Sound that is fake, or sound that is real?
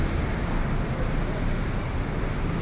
real